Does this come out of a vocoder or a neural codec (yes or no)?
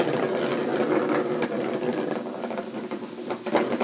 no